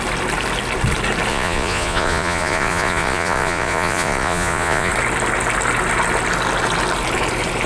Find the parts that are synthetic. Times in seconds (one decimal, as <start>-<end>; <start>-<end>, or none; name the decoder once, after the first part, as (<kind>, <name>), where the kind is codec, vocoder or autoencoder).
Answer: 1.3-4.9 (vocoder, Vocos)